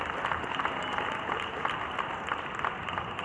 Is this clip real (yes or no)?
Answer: yes